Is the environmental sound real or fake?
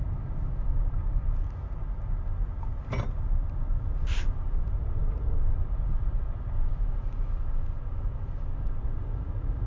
real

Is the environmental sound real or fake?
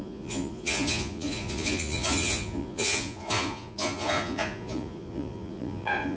fake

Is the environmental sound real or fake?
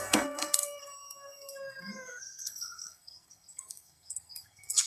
fake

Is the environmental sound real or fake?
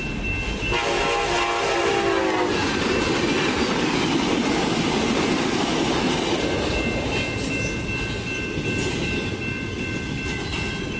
real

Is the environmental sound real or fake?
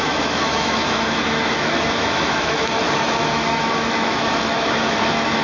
fake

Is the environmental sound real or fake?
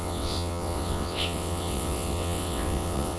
fake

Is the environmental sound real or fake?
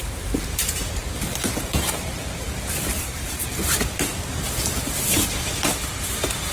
fake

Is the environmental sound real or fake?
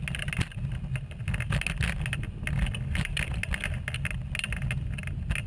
real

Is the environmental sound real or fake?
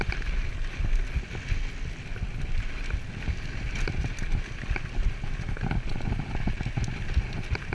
real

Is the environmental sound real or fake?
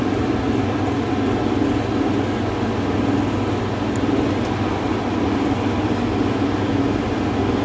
real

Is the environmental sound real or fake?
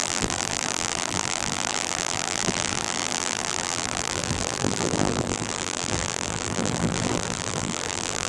fake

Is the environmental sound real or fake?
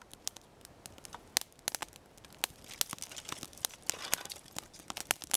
real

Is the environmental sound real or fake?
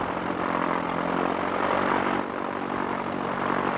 real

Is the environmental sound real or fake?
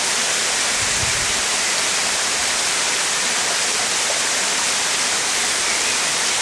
real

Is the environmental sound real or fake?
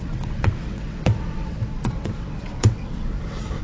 fake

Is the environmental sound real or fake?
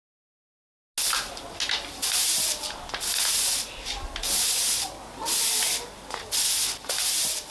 real